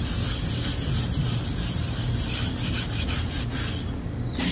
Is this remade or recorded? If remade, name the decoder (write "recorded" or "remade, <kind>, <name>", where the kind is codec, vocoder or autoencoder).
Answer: recorded